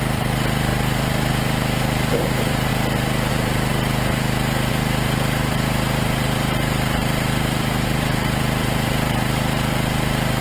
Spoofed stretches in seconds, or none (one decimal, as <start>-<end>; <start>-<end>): 0.0-2.7; 3.3-3.7; 4.7-10.4